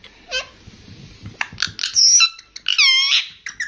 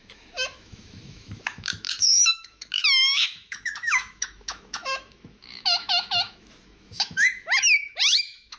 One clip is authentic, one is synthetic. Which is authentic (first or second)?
first